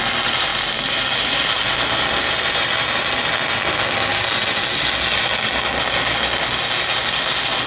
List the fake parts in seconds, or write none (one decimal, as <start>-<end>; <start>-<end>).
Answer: none